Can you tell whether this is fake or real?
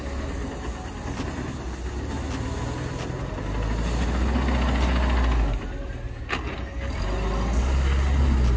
real